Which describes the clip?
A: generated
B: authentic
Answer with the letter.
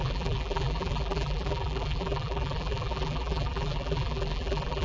A